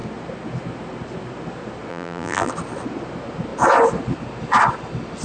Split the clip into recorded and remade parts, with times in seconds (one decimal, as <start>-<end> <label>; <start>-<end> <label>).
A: 0.0-1.9 recorded; 1.9-2.5 remade; 2.5-5.2 recorded